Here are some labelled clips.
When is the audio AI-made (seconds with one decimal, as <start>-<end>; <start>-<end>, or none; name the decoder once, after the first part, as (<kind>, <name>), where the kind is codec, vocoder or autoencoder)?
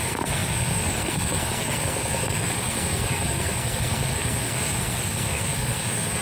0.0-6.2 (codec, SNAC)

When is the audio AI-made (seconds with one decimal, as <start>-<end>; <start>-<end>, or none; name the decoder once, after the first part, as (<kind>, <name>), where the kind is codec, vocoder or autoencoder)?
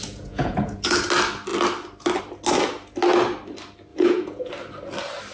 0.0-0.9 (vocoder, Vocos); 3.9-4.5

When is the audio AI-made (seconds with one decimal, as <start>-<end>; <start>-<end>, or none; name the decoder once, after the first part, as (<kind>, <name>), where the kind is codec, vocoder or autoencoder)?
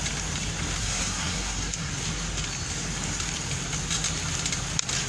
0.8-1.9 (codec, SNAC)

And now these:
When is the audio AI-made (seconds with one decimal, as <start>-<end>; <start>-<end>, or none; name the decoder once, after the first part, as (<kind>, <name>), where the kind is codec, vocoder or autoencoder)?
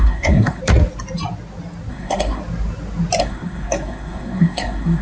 0.0-0.6 (codec, SNAC); 1.9-2.4; 3.2-5.0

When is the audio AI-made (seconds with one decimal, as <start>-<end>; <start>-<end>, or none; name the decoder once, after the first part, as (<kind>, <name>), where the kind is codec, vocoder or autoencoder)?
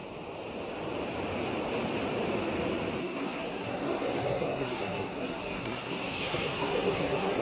3.0-7.4 (codec, SNAC)